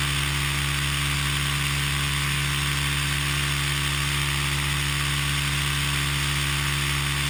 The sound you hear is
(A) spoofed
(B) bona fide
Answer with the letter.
B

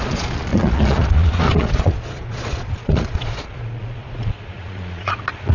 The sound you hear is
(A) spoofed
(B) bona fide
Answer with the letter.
A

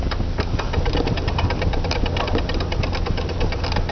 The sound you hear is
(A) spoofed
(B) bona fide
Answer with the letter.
B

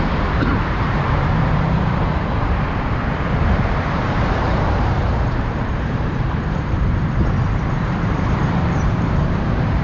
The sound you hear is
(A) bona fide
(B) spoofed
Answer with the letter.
B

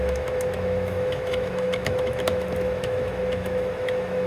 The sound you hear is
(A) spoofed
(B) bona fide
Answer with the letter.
A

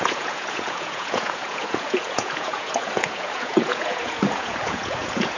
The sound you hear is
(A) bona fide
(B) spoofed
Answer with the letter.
B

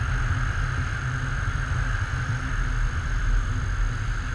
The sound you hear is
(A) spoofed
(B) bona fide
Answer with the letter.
A